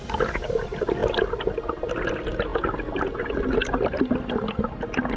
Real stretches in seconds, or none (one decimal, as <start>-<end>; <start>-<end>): 0.0-1.0; 2.1-5.2